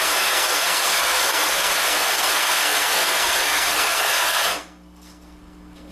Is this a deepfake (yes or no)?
yes